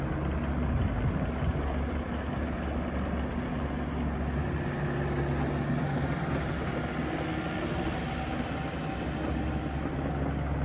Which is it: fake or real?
real